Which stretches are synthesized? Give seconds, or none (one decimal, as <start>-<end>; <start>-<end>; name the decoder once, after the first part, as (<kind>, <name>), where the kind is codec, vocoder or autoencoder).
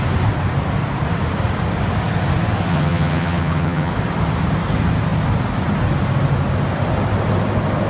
2.7-3.9 (vocoder, HiFi-GAN)